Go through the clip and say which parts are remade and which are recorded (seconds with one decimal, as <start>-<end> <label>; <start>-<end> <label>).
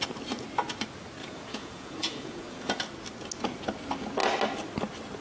0.0-1.2 recorded; 1.2-2.8 remade; 2.8-5.2 recorded